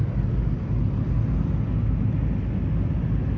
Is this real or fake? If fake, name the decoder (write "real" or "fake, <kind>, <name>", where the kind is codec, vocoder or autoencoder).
real